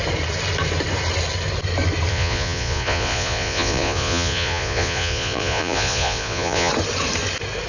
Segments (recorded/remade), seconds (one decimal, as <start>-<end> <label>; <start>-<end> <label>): 0.0-2.1 recorded; 2.1-6.7 remade; 6.7-7.7 recorded

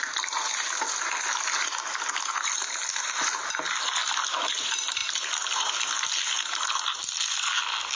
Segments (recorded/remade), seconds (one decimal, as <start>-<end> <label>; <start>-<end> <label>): 0.0-4.0 recorded; 4.0-4.5 remade; 4.5-8.0 recorded